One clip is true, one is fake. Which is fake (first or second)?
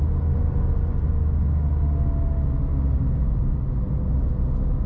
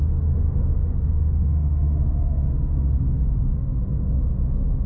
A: second